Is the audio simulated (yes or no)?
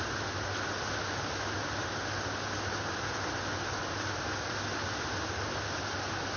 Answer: no